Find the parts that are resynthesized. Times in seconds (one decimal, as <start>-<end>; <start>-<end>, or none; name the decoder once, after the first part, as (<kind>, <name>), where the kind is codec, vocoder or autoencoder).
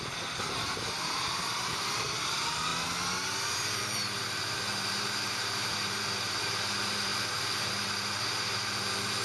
0.0-2.7 (vocoder, BigVGAN v2); 3.5-9.2